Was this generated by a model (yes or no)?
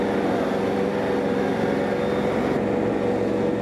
no